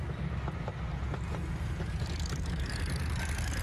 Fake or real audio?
real